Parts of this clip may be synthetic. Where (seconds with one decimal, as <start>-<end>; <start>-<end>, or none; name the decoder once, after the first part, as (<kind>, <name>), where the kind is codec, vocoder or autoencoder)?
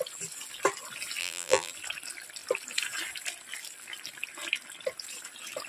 1.2-1.7 (vocoder, BigVGAN v2)